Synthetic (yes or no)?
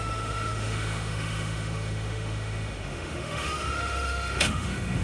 yes